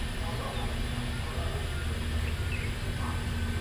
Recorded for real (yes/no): yes